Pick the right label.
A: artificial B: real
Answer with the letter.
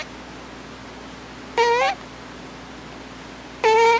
B